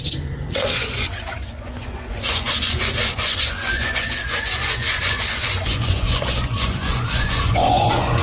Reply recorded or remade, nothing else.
remade